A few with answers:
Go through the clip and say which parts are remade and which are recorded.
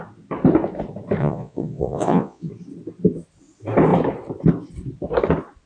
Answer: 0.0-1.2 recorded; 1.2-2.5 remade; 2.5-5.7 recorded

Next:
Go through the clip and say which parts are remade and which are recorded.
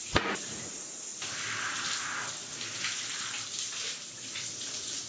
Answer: 0.0-1.1 remade; 1.1-4.2 recorded; 4.2-5.1 remade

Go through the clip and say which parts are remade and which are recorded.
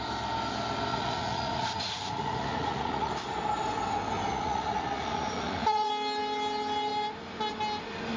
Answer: 0.0-0.9 recorded; 0.9-3.1 remade; 3.1-4.3 recorded; 4.3-5.9 remade; 5.9-8.2 recorded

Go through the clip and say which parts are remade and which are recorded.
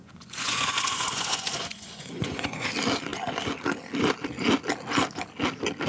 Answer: 0.0-2.7 remade; 2.7-5.9 recorded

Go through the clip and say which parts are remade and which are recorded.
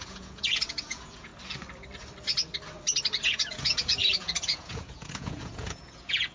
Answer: 0.0-1.3 remade; 1.3-3.2 recorded; 3.2-6.3 remade